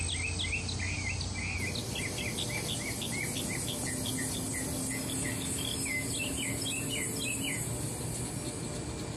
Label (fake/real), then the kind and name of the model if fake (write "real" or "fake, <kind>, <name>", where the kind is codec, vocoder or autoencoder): real